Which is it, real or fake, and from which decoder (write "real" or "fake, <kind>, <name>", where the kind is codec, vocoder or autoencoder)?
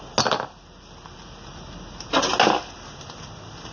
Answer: real